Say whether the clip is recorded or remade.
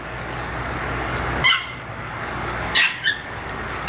remade